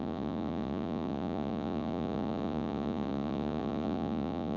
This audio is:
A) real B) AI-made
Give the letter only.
B